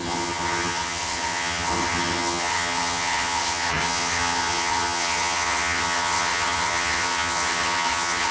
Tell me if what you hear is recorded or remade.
remade